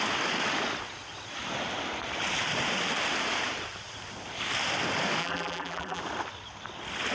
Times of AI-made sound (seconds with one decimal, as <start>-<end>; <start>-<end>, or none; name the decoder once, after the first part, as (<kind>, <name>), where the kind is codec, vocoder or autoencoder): 5.2-6.0 (vocoder, BigVGAN v2)